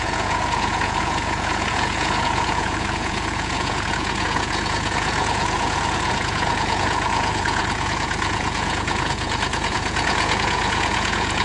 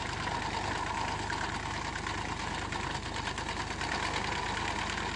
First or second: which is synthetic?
first